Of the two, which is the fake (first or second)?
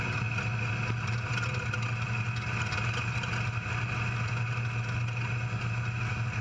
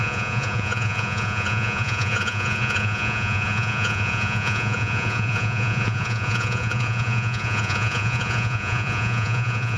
second